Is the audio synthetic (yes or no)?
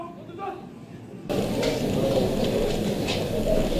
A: yes